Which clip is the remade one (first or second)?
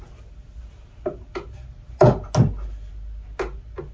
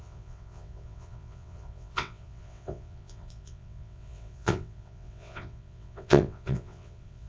second